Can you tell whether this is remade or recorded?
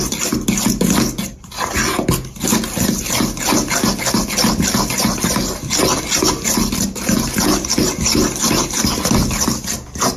recorded